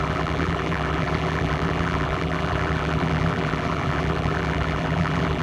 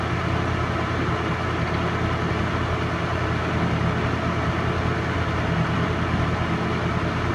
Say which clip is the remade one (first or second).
first